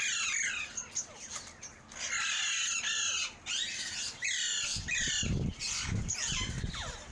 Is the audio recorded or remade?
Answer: recorded